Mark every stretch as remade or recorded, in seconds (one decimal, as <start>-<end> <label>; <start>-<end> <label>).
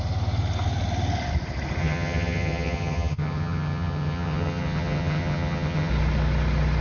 0.0-1.8 recorded; 1.8-5.9 remade; 5.9-6.8 recorded